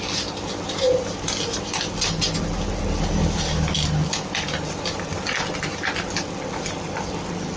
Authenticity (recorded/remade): recorded